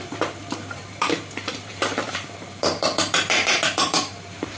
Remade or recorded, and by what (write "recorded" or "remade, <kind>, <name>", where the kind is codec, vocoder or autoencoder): remade, vocoder, BigVGAN v2